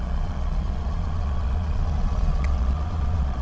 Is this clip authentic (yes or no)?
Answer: no